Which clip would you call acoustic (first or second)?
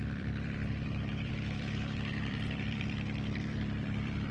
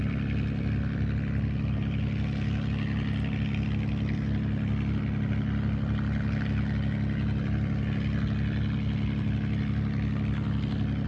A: second